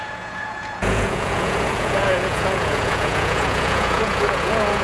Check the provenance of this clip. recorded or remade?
remade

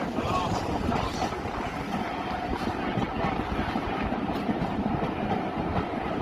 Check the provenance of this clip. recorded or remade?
recorded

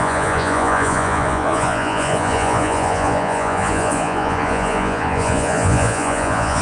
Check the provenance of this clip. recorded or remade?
remade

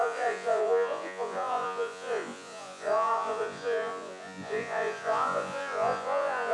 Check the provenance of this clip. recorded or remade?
remade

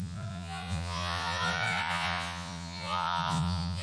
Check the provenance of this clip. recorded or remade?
remade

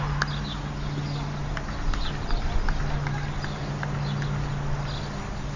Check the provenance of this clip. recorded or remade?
recorded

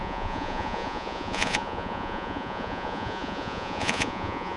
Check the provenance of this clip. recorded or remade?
remade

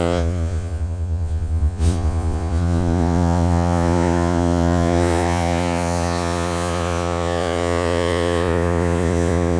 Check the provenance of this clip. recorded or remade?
remade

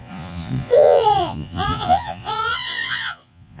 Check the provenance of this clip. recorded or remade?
remade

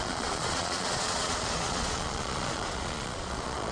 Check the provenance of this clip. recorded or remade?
remade